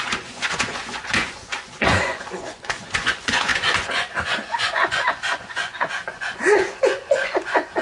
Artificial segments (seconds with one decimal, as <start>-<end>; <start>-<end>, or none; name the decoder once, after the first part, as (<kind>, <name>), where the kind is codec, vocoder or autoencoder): 0.0-7.8 (vocoder, Vocos)